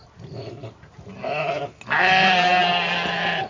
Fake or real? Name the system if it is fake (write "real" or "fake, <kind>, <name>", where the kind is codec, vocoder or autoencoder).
real